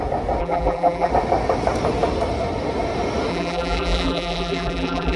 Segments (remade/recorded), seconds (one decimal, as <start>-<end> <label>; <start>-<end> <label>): 0.0-0.4 recorded; 0.4-1.1 remade; 1.1-3.3 recorded; 3.3-5.2 remade